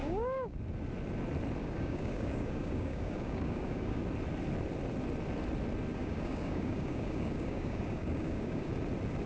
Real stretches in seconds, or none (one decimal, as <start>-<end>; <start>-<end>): 0.6-1.6; 4.0-5.9; 8.7-9.3